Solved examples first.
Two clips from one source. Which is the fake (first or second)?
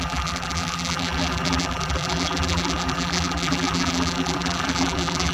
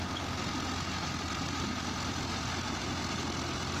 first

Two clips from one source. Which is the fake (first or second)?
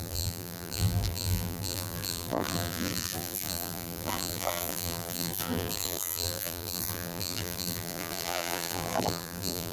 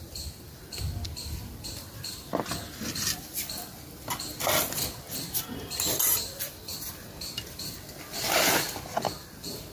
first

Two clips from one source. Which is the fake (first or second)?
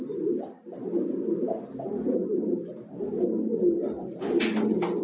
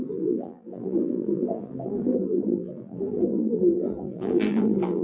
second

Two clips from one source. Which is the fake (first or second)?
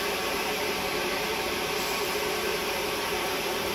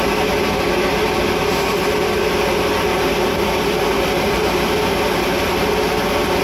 first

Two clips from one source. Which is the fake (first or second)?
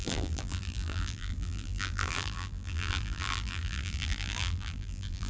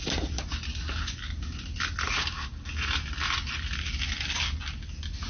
first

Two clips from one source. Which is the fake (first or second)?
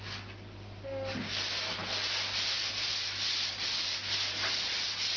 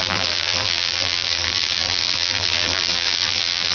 second